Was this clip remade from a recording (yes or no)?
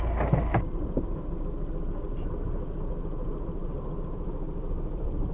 no